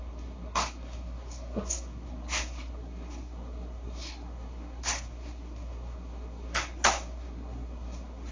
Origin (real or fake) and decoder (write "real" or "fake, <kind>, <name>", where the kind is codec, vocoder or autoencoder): fake, codec, SNAC